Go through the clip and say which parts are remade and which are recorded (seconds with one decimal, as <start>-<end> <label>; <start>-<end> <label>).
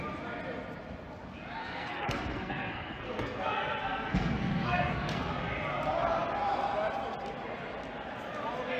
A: 0.0-1.6 recorded; 1.6-5.3 remade; 5.3-8.8 recorded